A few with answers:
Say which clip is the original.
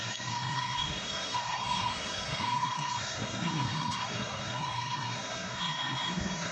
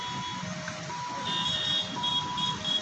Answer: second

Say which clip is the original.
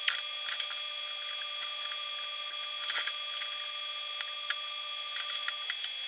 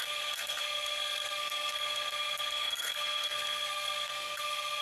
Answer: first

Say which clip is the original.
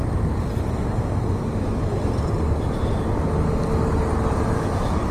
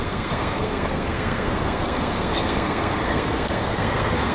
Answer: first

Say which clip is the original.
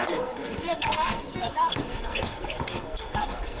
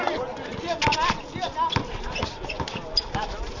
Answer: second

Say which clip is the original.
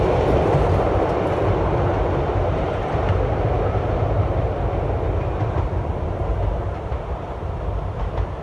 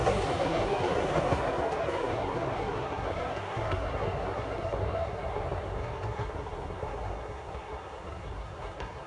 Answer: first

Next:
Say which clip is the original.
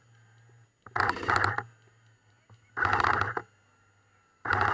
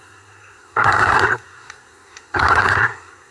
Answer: first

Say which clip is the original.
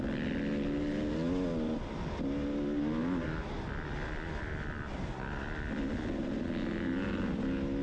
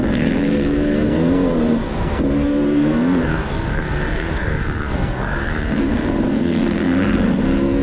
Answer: first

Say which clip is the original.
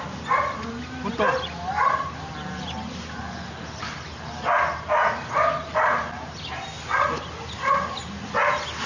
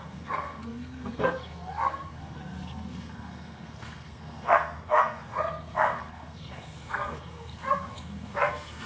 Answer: first